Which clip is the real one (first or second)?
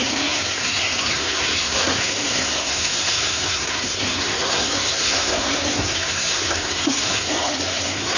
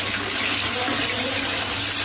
second